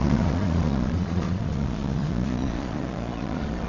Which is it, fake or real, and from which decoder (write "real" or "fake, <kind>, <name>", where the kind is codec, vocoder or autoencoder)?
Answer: fake, vocoder, Vocos